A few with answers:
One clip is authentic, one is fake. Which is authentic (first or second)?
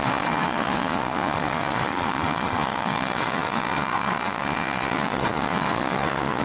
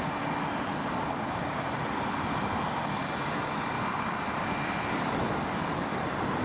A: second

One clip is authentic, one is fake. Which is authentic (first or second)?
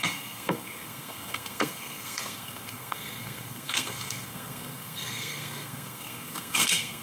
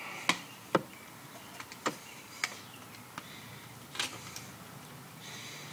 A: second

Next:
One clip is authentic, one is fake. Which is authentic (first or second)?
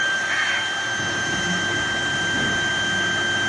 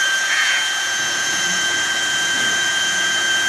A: first